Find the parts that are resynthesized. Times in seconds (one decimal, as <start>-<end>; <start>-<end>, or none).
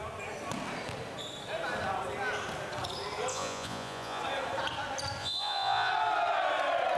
3.3-4.2; 5.2-5.9